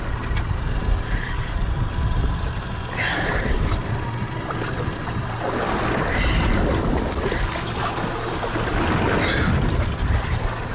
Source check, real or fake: real